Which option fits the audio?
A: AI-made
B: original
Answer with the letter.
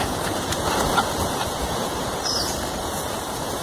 A